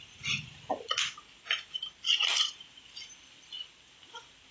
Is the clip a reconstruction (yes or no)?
no